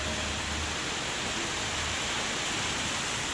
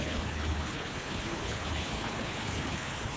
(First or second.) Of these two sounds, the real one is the first